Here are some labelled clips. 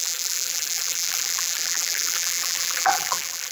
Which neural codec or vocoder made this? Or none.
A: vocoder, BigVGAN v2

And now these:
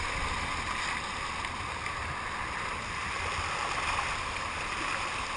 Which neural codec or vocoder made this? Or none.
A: vocoder, BigVGAN v2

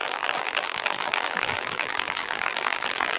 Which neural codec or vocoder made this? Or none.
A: vocoder, BigVGAN v2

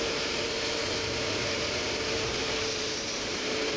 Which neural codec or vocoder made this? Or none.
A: vocoder, BigVGAN v2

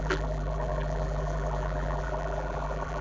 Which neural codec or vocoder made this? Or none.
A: vocoder, BigVGAN v2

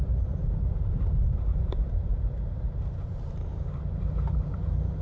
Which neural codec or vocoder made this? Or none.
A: vocoder, BigVGAN v2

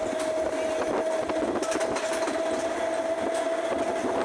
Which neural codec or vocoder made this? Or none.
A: none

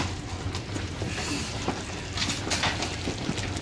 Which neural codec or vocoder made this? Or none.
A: none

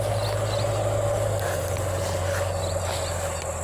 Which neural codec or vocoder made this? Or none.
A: none